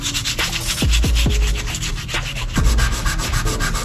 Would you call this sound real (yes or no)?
yes